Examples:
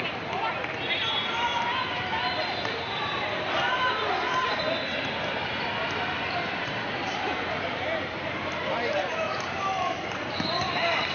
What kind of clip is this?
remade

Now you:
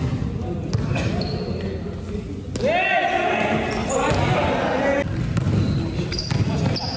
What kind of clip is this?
recorded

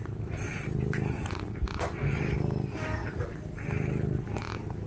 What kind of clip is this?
recorded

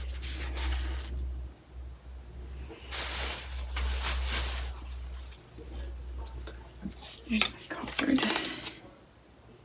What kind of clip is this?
recorded